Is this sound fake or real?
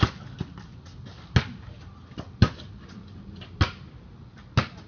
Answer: real